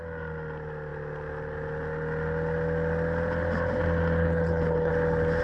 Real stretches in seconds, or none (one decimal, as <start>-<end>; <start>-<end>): 0.0-4.2; 4.9-5.4

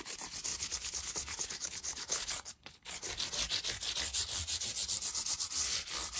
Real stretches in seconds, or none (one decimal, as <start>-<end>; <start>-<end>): 0.0-0.5; 3.1-6.2

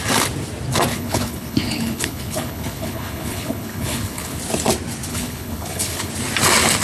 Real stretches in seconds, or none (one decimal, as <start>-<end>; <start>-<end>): 0.0-0.9; 4.4-5.1; 6.1-6.8

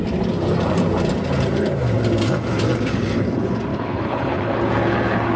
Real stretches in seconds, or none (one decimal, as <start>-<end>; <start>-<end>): 0.0-3.7; 4.6-5.4